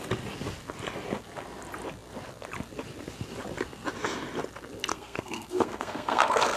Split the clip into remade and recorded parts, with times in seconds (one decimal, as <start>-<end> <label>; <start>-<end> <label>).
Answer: 0.0-4.9 recorded; 4.9-6.6 remade